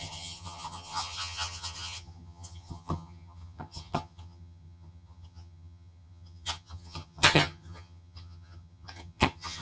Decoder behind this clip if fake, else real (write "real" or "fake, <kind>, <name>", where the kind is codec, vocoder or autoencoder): fake, vocoder, HiFi-GAN